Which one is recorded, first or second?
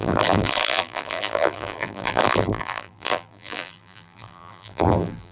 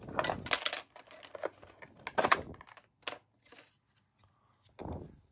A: second